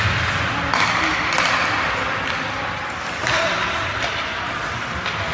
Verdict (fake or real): real